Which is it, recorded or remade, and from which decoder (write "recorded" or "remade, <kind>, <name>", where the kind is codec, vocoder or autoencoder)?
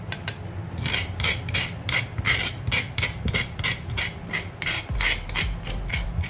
remade, vocoder, BigVGAN v2